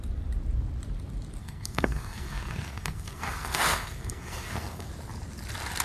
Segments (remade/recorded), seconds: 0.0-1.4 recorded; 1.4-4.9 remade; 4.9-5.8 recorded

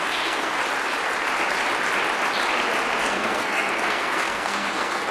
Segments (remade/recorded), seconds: 0.0-0.6 remade; 0.6-3.0 recorded; 3.0-5.1 remade